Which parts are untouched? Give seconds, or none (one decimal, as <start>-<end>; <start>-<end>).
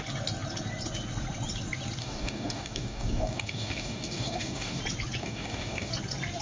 0.0-2.0; 4.8-5.2; 5.9-6.4